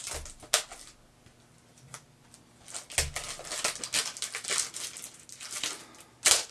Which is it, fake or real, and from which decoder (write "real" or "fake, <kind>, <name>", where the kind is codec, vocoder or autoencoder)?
real